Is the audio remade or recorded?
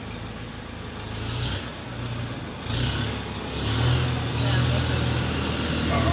recorded